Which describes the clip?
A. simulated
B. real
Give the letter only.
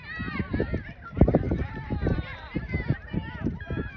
A